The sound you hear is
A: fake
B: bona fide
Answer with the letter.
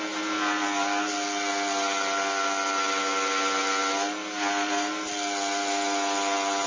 B